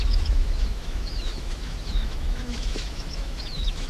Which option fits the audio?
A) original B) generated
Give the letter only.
B